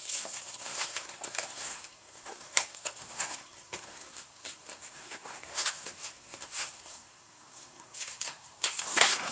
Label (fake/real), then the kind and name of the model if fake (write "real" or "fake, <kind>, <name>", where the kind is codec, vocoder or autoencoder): fake, codec, SNAC